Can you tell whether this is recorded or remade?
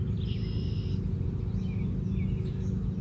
recorded